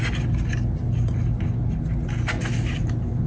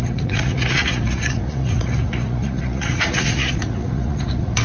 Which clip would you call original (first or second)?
first